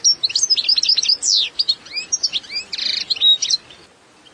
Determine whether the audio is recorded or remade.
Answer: recorded